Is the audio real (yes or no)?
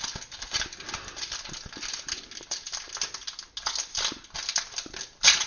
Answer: yes